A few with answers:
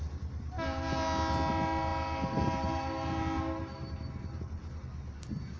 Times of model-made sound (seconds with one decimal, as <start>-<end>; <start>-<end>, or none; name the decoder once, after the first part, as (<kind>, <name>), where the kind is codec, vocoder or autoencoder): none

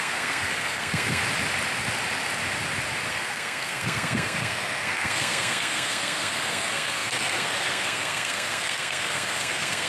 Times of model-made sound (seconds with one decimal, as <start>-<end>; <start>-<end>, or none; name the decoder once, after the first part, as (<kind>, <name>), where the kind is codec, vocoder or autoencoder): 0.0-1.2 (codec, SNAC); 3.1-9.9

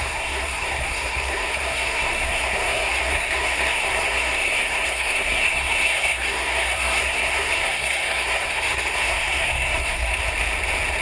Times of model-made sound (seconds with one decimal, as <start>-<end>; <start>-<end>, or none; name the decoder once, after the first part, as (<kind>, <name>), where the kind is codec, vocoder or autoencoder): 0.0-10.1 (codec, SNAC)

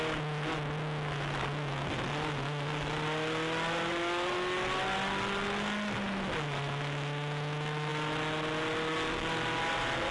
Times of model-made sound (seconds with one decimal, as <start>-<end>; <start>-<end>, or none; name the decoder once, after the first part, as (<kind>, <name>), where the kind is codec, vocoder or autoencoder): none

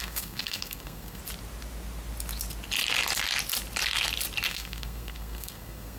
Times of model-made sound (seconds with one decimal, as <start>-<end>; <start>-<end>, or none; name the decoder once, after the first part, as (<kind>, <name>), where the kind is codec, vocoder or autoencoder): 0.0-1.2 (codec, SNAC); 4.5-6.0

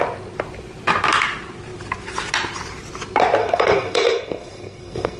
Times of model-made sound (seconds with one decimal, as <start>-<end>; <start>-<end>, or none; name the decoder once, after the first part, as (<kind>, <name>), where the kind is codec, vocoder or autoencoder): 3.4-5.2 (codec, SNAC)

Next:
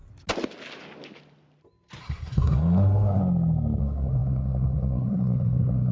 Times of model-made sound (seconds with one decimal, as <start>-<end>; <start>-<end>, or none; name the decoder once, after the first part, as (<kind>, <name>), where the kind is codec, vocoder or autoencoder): 2.0-3.2 (codec, SNAC); 3.8-5.9

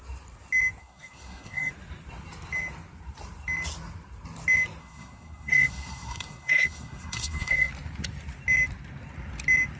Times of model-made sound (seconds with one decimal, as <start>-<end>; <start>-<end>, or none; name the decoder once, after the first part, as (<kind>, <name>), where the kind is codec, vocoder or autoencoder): 0.8-1.7 (codec, SNAC); 4.8-7.7